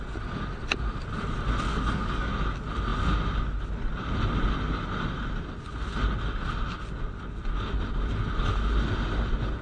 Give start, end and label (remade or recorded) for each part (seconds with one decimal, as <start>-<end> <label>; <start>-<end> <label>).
0.0-1.7 recorded; 1.7-2.3 remade; 2.3-9.6 recorded